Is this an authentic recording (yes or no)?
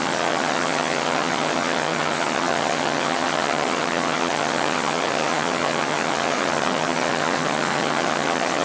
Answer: no